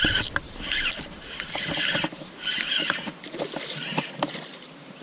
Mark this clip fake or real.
fake